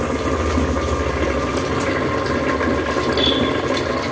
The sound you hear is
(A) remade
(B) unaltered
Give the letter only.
B